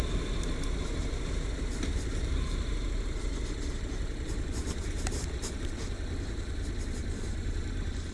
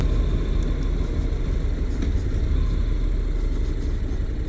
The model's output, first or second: first